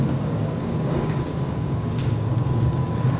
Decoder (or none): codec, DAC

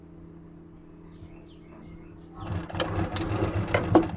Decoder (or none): none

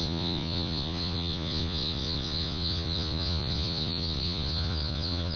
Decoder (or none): vocoder, Vocos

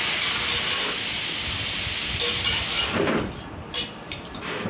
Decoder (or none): none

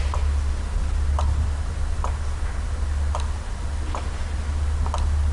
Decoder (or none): none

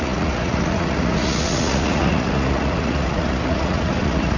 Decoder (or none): vocoder, Vocos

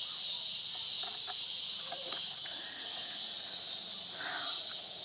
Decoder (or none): vocoder, Vocos